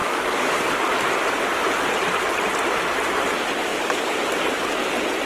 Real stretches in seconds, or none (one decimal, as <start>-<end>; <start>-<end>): 0.9-3.7; 4.5-5.3